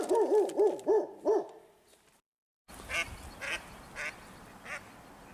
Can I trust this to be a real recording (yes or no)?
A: yes